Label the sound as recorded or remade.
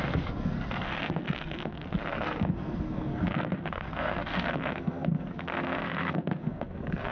remade